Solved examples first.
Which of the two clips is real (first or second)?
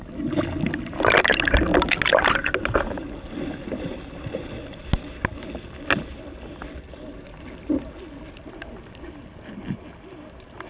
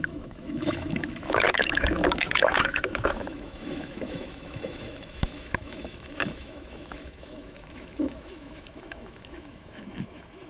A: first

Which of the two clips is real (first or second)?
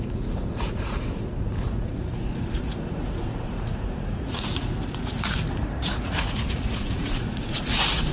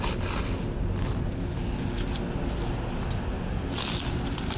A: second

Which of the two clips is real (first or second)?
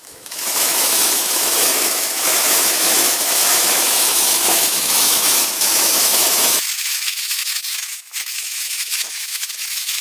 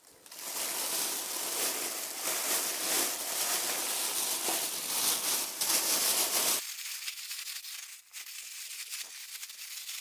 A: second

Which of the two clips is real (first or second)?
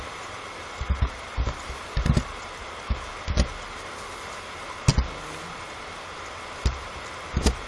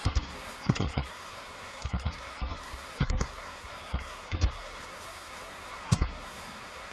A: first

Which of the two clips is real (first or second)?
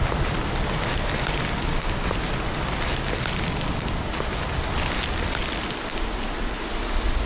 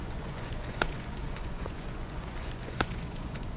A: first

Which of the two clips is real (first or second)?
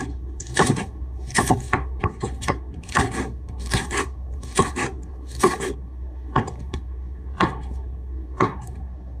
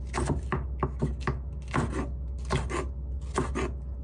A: second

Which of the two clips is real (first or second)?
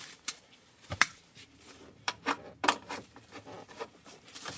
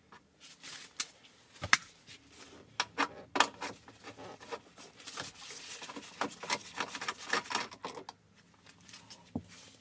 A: second